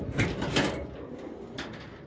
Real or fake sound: real